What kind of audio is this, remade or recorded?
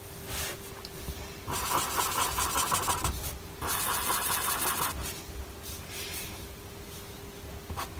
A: recorded